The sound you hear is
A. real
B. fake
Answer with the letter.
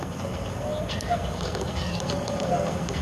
B